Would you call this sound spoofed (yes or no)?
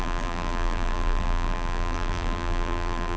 yes